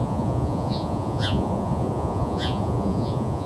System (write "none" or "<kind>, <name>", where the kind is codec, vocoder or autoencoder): vocoder, Vocos